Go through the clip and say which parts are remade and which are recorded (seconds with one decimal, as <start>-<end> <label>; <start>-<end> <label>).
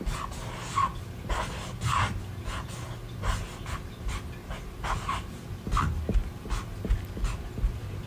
0.0-4.4 recorded; 4.4-5.4 remade; 5.4-8.1 recorded